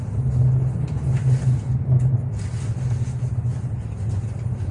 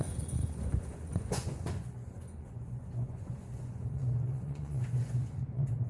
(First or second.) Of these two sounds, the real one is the first